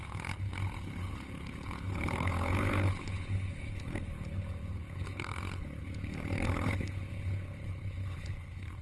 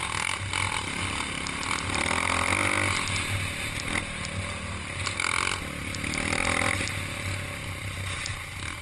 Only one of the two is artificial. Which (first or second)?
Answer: first